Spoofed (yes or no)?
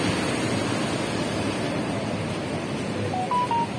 no